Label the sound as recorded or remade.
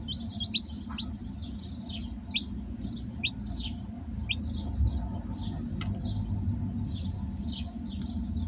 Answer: recorded